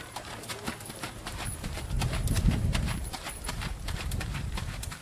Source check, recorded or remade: remade